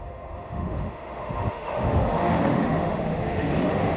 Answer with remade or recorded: remade